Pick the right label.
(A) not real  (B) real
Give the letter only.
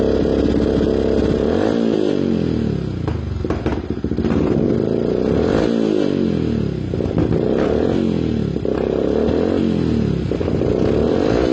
B